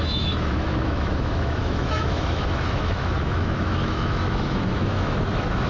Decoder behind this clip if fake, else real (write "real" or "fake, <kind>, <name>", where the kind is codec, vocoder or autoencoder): fake, autoencoder, DAC-VAE